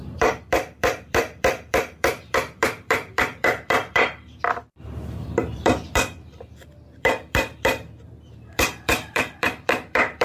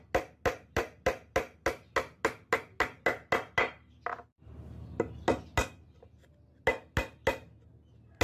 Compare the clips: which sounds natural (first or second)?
second